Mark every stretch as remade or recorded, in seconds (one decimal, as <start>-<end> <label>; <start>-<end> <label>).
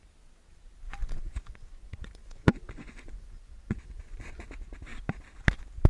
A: 0.0-1.0 recorded; 1.0-4.5 remade; 4.5-5.9 recorded